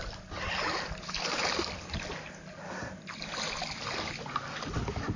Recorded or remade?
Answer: recorded